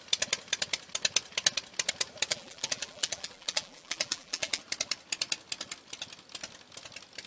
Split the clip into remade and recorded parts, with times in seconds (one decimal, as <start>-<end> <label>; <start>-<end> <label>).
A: 0.0-2.3 recorded; 2.3-4.6 remade; 4.6-7.3 recorded